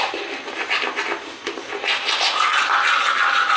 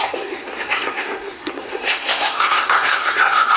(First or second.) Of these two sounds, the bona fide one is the first